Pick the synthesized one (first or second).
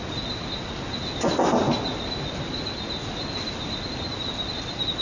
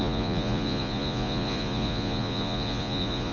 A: second